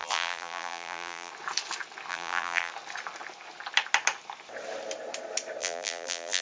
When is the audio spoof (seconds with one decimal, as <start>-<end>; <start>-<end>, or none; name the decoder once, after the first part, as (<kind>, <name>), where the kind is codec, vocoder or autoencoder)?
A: 0.0-1.3 (vocoder, BigVGAN v2); 2.1-2.7; 5.6-6.4